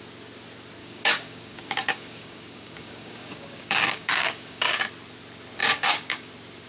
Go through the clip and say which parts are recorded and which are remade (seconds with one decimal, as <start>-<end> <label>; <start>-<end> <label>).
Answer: 0.0-0.8 recorded; 0.8-4.8 remade; 4.8-5.6 recorded; 5.6-6.3 remade; 6.3-6.7 recorded